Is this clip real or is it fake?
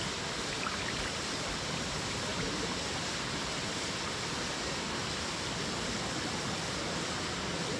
real